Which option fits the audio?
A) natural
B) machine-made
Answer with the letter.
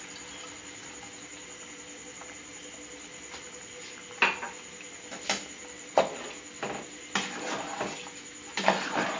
A